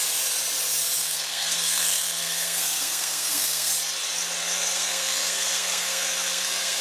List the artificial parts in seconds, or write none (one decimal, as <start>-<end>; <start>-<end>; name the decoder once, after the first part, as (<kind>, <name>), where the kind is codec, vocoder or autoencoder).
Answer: 1.0-3.7 (codec, SNAC); 4.4-6.8